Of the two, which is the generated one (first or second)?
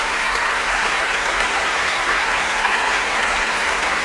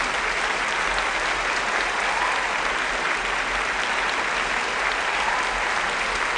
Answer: first